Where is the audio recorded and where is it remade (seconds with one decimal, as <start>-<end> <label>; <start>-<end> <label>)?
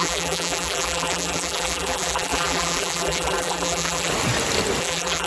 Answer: 0.0-4.1 remade; 4.1-4.8 recorded; 4.8-5.3 remade